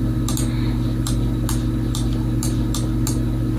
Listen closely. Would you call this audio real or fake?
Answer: real